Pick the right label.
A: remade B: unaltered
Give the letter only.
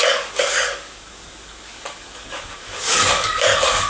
A